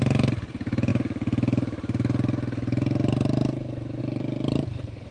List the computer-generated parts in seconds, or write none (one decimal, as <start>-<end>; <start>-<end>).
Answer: 0.0-0.9; 4.0-5.1